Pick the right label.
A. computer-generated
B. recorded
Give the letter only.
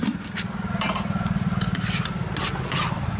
B